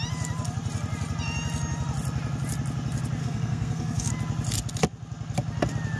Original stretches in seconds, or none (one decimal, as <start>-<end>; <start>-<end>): 0.0-3.2; 4.1-6.0